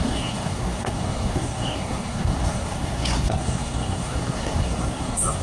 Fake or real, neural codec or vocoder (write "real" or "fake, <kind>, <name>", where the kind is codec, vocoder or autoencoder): fake, codec, SNAC